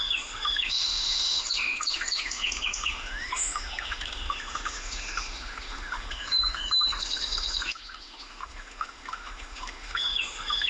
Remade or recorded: remade